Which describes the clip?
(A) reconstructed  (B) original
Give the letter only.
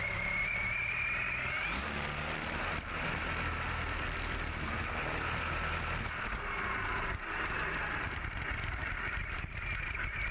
B